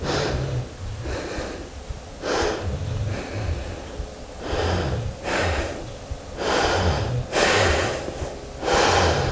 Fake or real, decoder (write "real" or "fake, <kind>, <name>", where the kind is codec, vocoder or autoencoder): real